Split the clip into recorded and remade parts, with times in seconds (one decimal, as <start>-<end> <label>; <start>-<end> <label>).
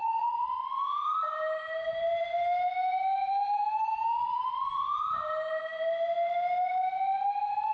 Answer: 0.0-7.7 recorded